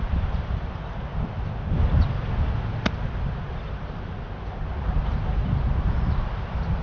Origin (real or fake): real